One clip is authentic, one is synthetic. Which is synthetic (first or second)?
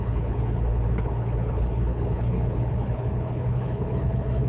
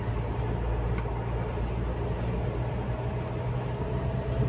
first